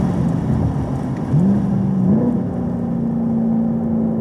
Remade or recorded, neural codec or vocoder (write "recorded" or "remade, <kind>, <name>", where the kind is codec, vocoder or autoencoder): recorded